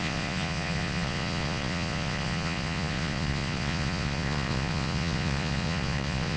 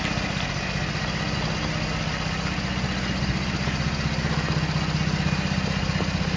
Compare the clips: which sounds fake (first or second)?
first